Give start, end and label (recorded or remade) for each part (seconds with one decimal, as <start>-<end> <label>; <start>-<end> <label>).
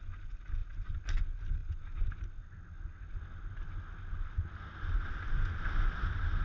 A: 0.0-6.4 recorded